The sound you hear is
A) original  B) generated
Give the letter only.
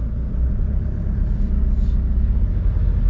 A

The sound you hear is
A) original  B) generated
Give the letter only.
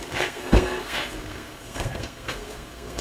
B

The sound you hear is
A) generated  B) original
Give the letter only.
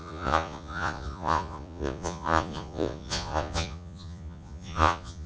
A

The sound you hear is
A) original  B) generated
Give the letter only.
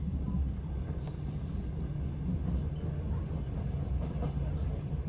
A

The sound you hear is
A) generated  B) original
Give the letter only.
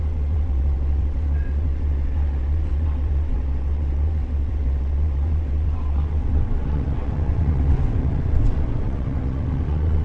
A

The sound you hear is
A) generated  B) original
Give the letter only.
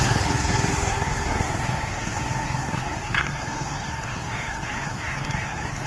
A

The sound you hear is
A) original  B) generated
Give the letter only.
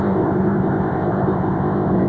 B